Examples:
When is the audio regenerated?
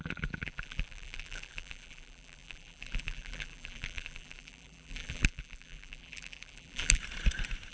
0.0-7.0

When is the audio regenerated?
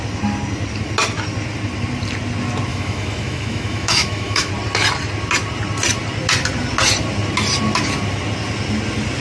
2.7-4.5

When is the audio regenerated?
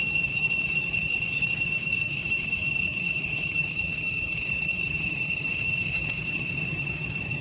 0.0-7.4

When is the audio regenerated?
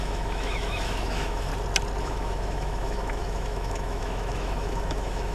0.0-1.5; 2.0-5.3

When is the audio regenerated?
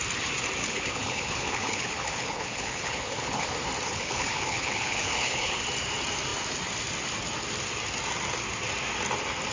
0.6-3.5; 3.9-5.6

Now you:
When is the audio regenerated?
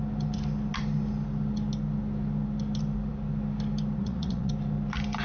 4.0-4.5